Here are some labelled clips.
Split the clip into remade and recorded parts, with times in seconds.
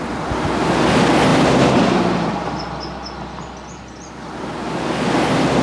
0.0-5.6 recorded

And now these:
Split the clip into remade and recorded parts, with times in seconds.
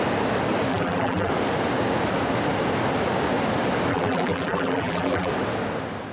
0.0-0.7 recorded; 0.7-1.3 remade; 1.3-3.9 recorded; 3.9-5.3 remade; 5.3-6.1 recorded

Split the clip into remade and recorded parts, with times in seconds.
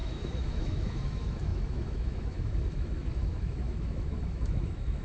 0.0-5.0 remade